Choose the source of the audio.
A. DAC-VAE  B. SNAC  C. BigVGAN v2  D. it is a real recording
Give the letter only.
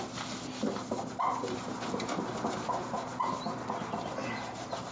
D